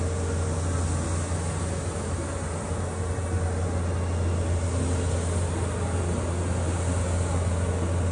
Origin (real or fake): real